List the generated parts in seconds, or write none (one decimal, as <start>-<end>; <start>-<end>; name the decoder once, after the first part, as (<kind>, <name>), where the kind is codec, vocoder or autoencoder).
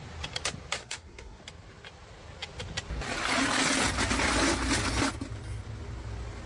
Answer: 0.8-1.4 (codec, SNAC)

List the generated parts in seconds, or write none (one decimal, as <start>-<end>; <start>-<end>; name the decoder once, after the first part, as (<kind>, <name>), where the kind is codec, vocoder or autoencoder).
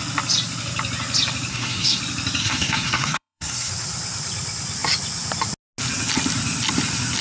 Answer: 1.5-2.0 (codec, SNAC); 2.4-3.7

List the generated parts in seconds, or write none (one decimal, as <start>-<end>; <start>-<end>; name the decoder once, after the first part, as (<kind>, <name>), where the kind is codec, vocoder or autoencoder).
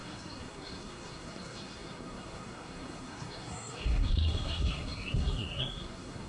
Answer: 0.0-6.3 (codec, SNAC)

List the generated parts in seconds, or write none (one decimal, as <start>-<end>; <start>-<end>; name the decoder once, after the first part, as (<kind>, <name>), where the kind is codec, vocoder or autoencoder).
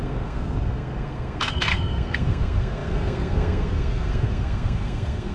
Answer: 0.0-5.3 (codec, SNAC)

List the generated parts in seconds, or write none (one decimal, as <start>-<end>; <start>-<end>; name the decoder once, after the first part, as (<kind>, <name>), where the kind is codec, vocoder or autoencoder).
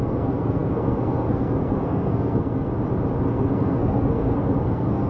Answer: 0.0-2.7 (codec, SNAC); 3.3-5.1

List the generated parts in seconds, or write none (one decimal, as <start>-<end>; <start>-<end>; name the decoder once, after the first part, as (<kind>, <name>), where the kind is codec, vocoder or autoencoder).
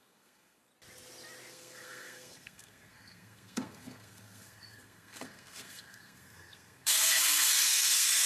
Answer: 0.0-0.7 (codec, SNAC); 1.5-8.3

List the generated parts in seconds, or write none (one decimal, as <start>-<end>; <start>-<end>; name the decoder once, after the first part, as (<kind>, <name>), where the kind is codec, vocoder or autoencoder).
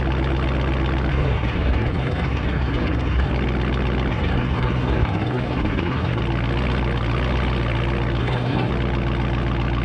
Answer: 1.1-3.3 (codec, SNAC); 4.1-6.2; 8.2-8.7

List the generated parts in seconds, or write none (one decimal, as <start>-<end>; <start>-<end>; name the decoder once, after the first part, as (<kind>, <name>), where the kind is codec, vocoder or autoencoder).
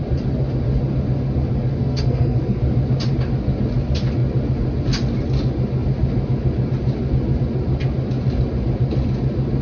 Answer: 1.8-2.6 (codec, SNAC)